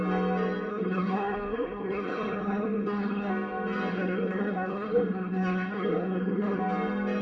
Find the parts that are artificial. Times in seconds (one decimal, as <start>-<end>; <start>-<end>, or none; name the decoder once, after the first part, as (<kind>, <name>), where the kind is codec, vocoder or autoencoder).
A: 0.7-3.3 (codec, SNAC); 3.9-6.6

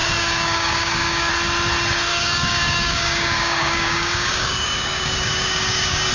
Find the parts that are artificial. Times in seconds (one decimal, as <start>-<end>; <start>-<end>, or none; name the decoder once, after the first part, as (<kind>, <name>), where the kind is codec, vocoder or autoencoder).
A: 0.0-1.3 (codec, DAC); 2.1-6.1